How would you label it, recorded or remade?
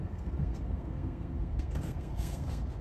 remade